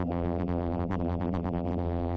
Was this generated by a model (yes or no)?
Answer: yes